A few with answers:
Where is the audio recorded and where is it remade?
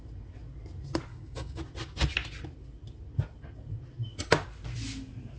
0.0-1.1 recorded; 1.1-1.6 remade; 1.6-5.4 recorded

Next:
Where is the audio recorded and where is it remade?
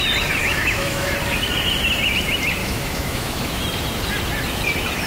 0.0-0.4 recorded; 0.4-1.1 remade; 1.1-2.6 recorded; 2.6-3.6 remade; 3.6-5.1 recorded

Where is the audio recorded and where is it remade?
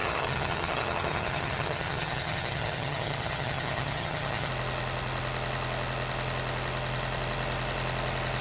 0.0-4.5 remade; 4.5-8.4 recorded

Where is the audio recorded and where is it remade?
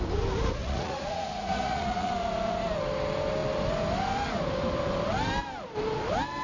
0.0-0.6 recorded; 0.6-2.1 remade; 2.1-6.4 recorded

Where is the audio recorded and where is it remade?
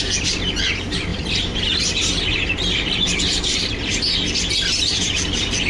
0.0-1.1 recorded; 1.1-4.5 remade; 4.5-5.7 recorded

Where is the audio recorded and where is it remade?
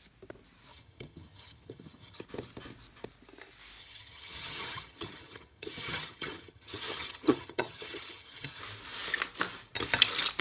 0.0-0.7 recorded; 0.7-2.2 remade; 2.2-3.8 recorded; 3.8-8.6 remade; 8.6-10.4 recorded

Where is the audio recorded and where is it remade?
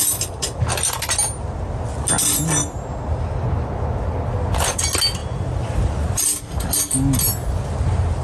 0.0-8.2 recorded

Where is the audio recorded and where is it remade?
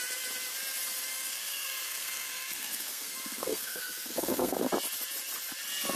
0.0-1.1 recorded; 1.1-4.7 remade; 4.7-6.0 recorded